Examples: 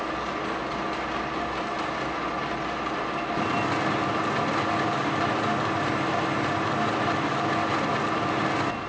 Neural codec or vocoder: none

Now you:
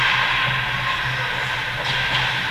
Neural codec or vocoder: none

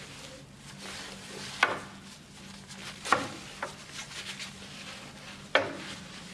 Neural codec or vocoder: none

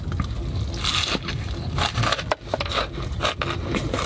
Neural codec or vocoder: none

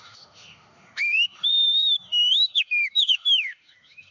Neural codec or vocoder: autoencoder, DAC-VAE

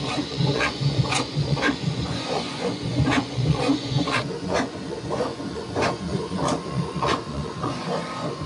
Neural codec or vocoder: vocoder, Vocos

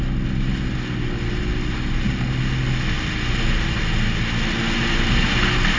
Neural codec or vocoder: none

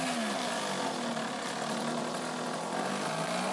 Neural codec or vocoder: none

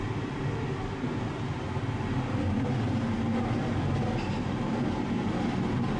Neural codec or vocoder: none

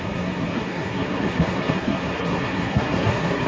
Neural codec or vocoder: codec, SNAC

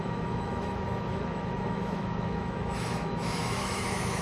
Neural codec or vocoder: autoencoder, DAC-VAE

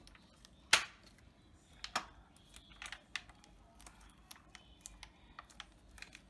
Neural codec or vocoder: none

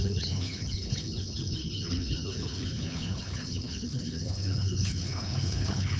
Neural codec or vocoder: codec, HILCodec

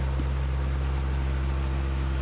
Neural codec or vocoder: none